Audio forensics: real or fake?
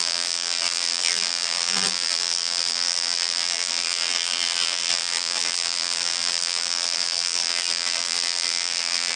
fake